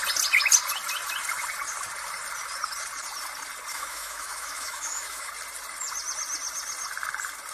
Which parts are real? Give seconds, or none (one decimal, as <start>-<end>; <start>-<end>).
0.0-3.7; 5.3-7.5